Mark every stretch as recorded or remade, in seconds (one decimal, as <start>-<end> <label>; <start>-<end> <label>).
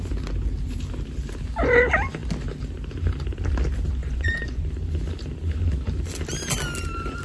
0.0-4.0 recorded; 4.0-4.6 remade; 4.6-7.2 recorded